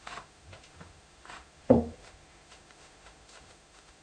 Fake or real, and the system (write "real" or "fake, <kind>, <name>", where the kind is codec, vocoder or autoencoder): fake, autoencoder, DAC-VAE